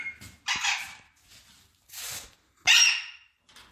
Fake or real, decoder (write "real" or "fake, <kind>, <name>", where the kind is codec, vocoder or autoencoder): real